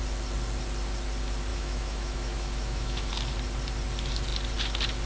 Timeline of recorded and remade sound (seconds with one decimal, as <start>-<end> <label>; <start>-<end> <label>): 0.0-1.5 recorded; 1.5-3.1 remade; 3.1-5.1 recorded